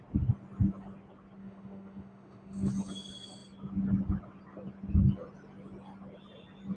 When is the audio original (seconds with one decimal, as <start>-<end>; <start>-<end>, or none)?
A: 0.0-1.4; 2.7-6.8